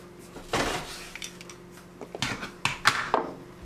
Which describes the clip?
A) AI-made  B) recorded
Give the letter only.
B